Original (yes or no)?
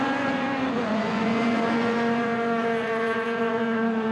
no